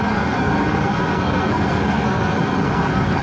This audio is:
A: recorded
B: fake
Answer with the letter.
B